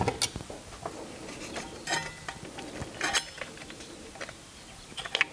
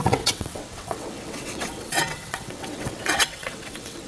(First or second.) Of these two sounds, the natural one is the first